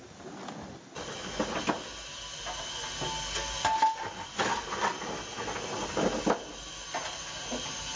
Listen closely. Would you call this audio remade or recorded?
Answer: recorded